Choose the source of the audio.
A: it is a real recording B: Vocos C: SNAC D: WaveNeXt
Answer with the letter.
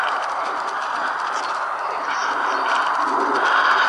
A